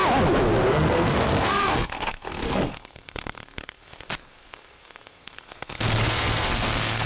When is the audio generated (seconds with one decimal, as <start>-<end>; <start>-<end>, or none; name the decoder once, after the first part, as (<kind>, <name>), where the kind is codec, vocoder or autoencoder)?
0.7-7.1 (codec, SNAC)